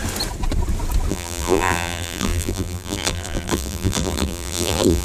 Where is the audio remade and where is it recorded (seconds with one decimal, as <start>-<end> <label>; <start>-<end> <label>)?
0.0-1.1 recorded; 1.1-5.0 remade

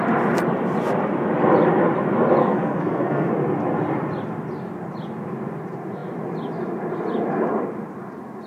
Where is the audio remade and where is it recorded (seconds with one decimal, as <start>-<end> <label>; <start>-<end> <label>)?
0.0-2.4 recorded; 2.4-3.3 remade; 3.3-8.5 recorded